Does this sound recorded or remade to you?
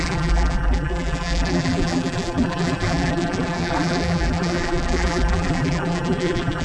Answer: remade